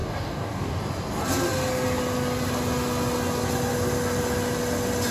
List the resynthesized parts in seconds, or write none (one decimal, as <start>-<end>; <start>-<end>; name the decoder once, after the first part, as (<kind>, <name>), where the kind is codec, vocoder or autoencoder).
0.0-0.8 (codec, DAC)